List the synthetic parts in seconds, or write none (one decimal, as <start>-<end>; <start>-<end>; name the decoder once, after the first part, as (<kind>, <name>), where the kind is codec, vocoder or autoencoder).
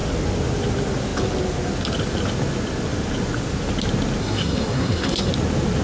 4.2-5.3 (codec, SNAC)